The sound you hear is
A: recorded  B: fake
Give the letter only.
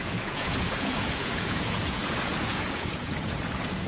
B